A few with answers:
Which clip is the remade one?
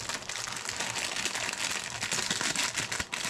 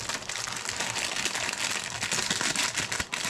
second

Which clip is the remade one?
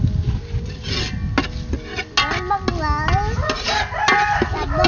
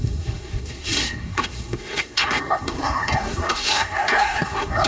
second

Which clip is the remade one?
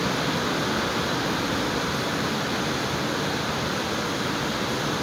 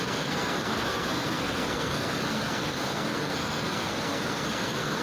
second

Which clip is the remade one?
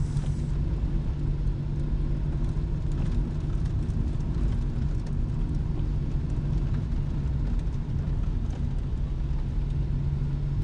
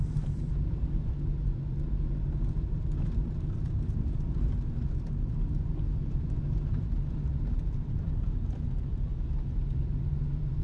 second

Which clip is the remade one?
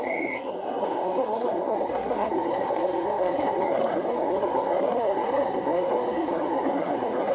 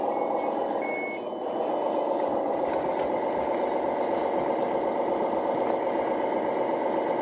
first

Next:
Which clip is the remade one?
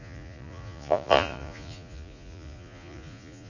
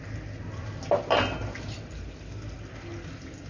first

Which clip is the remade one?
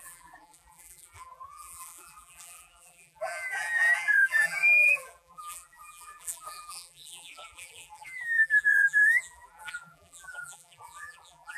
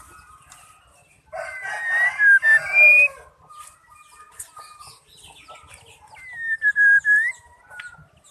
first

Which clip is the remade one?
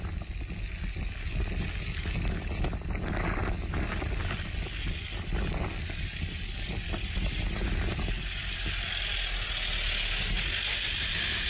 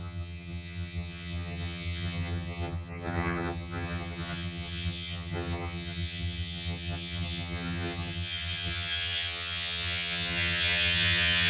second